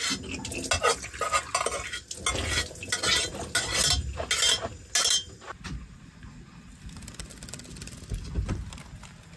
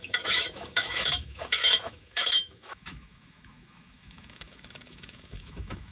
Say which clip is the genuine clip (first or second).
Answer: first